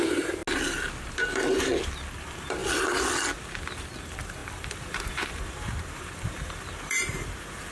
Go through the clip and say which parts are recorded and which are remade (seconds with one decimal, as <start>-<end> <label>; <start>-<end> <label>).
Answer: 0.0-0.4 remade; 0.4-1.0 recorded; 1.0-1.7 remade; 1.7-2.2 recorded; 2.2-2.6 remade; 2.6-4.0 recorded; 4.0-7.7 remade